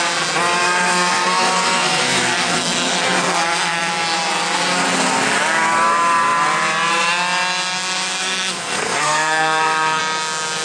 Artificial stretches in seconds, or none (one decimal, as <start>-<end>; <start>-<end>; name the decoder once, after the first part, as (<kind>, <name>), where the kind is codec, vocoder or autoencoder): 0.6-3.9 (codec, SNAC); 8.2-10.0